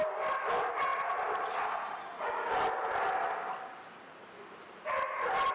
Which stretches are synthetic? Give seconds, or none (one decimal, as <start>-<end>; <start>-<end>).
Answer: none